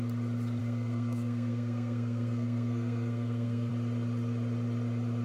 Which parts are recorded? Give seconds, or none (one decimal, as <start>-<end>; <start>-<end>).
0.0-0.6; 3.7-5.2